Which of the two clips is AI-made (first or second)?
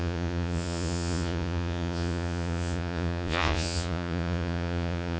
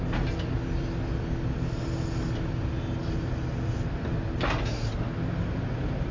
first